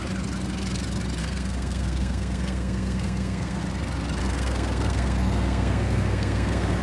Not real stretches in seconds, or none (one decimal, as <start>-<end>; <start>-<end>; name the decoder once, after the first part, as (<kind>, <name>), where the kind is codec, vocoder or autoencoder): 1.2-3.6 (codec, SNAC); 4.2-6.8